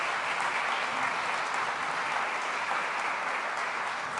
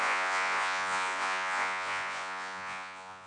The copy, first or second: second